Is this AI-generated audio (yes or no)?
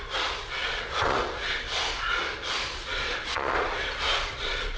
yes